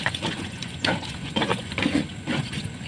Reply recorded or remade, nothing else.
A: remade